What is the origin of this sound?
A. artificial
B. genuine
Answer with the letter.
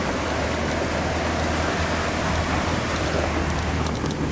B